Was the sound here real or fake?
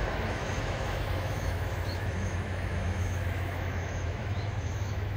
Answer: fake